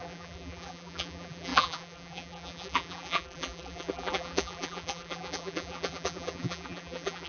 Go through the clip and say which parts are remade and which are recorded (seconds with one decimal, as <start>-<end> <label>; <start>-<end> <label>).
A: 0.0-7.3 remade